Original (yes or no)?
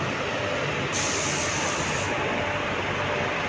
yes